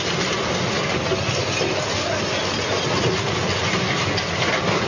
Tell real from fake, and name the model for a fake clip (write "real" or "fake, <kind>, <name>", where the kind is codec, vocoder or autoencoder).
real